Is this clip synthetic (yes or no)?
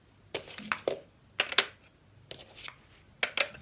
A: no